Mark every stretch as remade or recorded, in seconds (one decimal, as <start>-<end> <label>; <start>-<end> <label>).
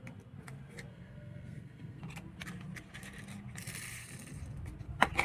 0.0-0.9 recorded; 0.9-2.0 remade; 2.0-5.2 recorded